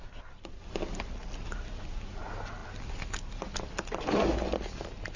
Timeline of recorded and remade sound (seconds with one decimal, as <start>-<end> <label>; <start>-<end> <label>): 0.0-5.2 recorded